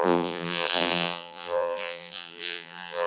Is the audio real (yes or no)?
no